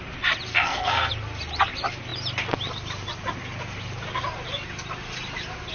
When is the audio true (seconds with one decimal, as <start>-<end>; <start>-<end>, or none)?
0.0-0.5; 1.1-5.7